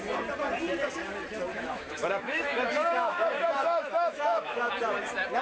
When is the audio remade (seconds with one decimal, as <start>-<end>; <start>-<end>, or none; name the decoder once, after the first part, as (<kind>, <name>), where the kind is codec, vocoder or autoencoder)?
1.5-4.7 (autoencoder, DAC-VAE)